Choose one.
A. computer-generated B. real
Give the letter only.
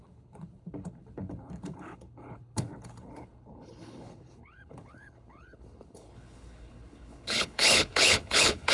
A